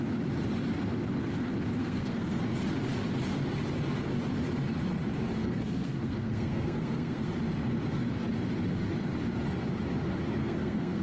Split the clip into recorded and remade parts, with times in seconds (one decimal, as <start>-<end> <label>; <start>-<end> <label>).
0.0-1.8 recorded; 1.8-2.4 remade; 2.4-5.4 recorded; 5.4-7.3 remade; 7.3-10.4 recorded; 10.4-11.0 remade